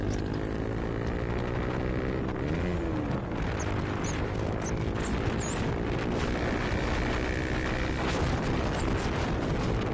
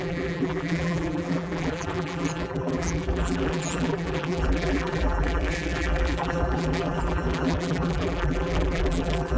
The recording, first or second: first